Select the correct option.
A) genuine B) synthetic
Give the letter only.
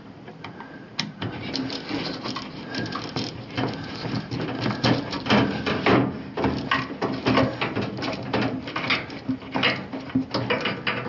A